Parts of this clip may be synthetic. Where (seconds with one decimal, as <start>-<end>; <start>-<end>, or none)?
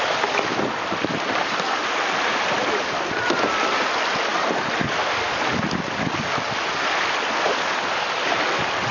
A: none